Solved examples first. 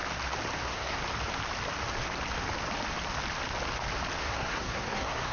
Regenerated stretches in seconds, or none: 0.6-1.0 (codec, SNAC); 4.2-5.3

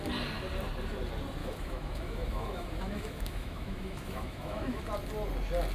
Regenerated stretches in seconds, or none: 1.4-4.8 (autoencoder, DAC-VAE)

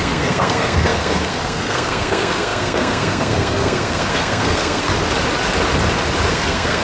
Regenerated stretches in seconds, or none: 0.0-4.9 (codec, SNAC); 6.3-6.8

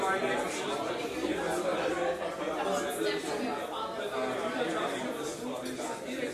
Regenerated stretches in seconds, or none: none

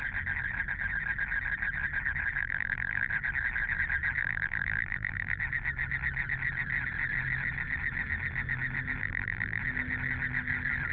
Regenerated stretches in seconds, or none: 2.4-3.1 (vocoder, BigVGAN v2); 4.2-5.4; 9.0-9.6

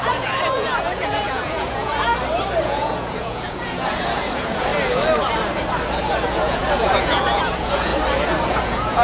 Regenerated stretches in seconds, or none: 0.0-2.1 (vocoder, Vocos); 2.6-4.7; 6.0-7.9; 8.5-9.0

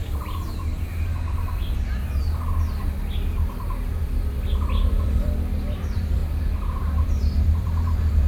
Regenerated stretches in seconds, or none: 4.9-6.2 (vocoder, BigVGAN v2); 6.8-8.3